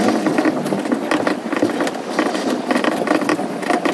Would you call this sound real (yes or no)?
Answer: yes